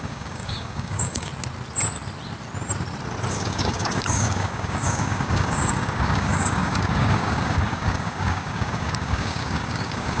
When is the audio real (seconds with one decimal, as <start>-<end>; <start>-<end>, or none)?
1.3-3.3